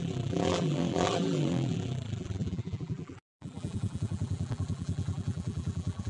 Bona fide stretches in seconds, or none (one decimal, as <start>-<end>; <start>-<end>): none